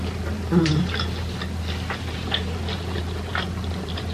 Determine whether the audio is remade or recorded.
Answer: recorded